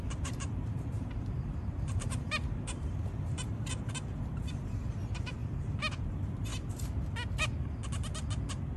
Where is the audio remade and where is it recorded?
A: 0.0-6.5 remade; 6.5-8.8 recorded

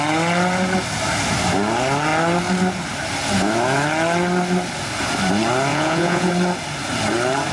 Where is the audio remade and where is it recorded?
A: 0.0-5.7 recorded; 5.7-6.3 remade; 6.3-7.5 recorded

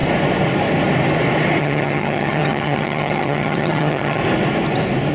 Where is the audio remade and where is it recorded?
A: 0.0-1.6 recorded; 1.6-4.2 remade; 4.2-5.1 recorded